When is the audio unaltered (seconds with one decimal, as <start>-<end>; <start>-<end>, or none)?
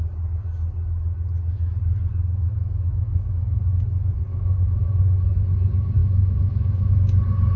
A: 0.0-2.1; 3.6-4.3; 5.0-6.0; 6.9-7.6